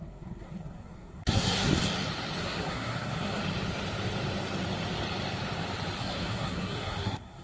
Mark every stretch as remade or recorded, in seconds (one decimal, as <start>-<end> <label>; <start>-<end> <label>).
0.0-1.7 remade; 1.7-2.4 recorded; 2.4-3.4 remade; 3.4-6.0 recorded; 6.0-7.4 remade